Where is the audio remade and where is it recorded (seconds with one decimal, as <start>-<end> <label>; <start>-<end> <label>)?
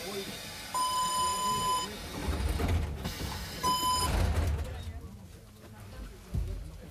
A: 0.0-6.9 recorded